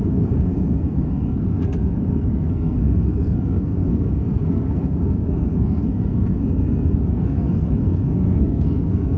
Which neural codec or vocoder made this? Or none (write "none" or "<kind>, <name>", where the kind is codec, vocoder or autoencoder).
codec, SNAC